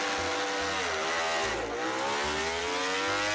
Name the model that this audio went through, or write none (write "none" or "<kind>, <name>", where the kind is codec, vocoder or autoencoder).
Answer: none